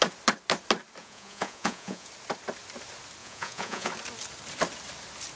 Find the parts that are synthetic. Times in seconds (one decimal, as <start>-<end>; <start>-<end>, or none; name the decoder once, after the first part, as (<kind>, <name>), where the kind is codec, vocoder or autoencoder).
1.0-2.1 (vocoder, Vocos); 3.2-3.9